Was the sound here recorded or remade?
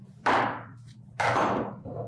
remade